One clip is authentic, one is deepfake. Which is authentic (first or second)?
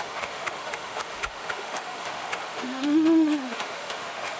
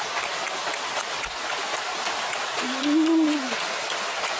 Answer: second